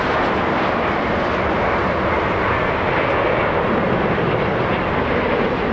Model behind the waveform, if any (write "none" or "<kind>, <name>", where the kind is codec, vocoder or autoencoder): none